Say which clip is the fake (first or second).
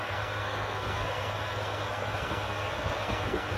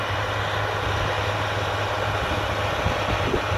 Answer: first